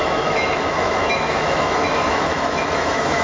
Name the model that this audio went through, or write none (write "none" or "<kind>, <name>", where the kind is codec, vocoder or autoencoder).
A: autoencoder, DAC-VAE